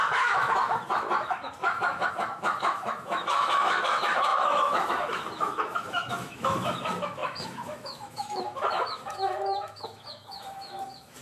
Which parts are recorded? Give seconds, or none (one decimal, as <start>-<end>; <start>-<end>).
none